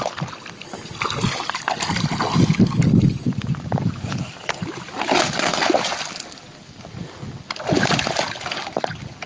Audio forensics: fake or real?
real